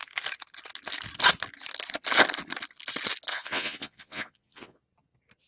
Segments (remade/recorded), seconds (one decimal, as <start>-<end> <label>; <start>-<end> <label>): 0.0-3.3 recorded; 3.3-4.8 remade; 4.8-5.5 recorded